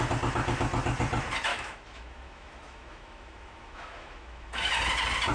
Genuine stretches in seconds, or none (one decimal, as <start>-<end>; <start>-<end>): 0.0-1.5; 4.7-5.3